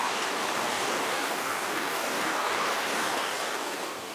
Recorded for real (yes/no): no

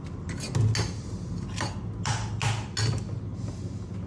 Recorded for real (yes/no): yes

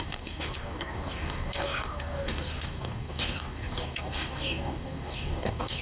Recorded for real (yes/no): no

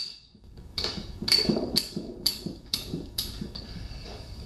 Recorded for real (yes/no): no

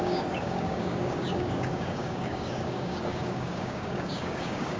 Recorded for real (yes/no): no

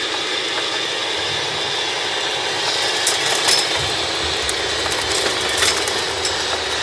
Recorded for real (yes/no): yes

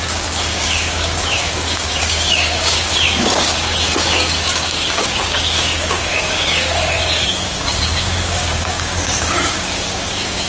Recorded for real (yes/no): no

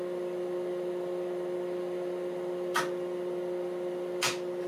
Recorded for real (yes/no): yes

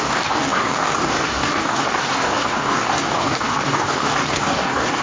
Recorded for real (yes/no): no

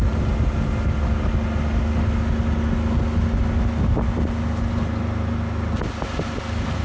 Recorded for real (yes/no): yes